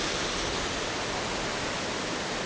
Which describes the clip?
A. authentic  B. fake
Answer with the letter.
A